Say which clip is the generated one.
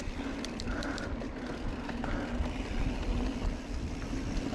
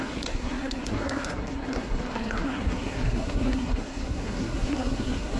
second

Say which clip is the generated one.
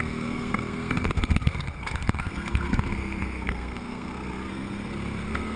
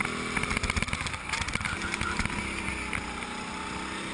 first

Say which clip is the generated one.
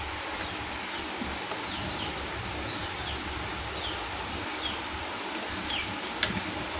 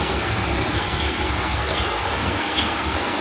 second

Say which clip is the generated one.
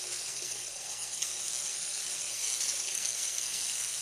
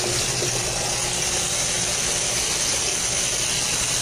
first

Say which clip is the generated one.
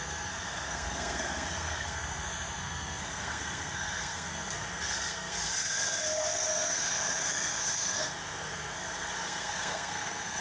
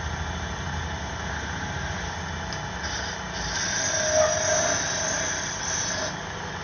first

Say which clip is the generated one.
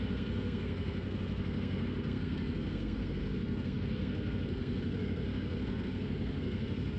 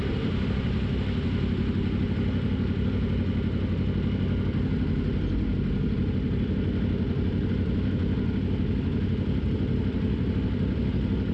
first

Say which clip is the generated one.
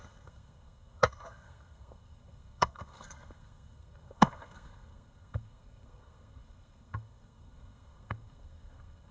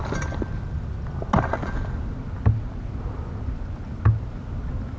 first